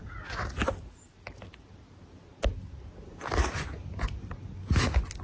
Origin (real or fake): real